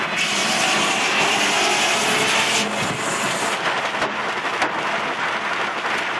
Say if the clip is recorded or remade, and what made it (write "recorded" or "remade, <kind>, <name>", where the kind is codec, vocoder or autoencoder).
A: recorded